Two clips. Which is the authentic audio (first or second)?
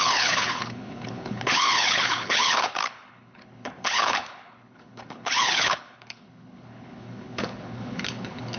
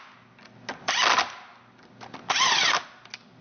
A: second